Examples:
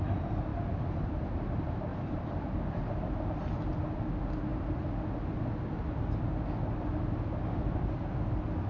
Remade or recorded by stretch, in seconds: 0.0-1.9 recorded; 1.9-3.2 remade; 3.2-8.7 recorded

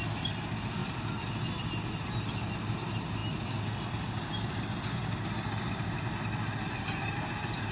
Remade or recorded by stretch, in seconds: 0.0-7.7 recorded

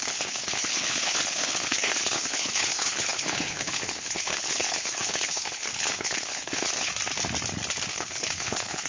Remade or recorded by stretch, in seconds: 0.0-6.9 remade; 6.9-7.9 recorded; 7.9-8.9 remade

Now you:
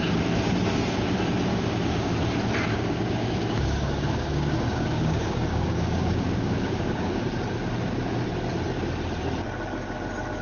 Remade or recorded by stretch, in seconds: 0.0-1.5 recorded; 1.5-2.1 remade; 2.1-2.7 recorded; 2.7-7.2 remade; 7.2-10.4 recorded

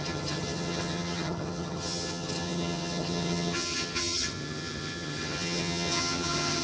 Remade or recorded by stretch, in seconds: 0.0-6.6 remade

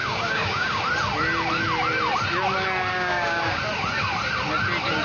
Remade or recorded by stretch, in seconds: 0.0-0.8 remade; 0.8-2.9 recorded; 2.9-3.6 remade; 3.6-5.0 recorded

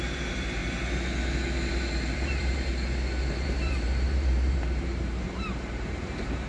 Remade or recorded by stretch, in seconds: 0.0-0.6 remade; 0.6-1.7 recorded; 1.7-2.7 remade; 2.7-3.3 recorded; 3.3-6.5 remade

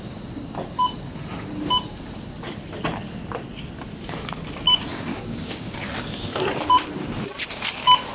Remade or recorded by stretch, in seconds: 0.0-4.9 recorded; 4.9-5.8 remade; 5.8-8.1 recorded